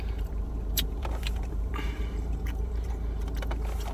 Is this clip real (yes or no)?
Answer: no